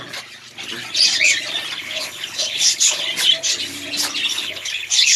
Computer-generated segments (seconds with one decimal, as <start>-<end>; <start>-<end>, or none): 1.8-3.0; 4.3-5.2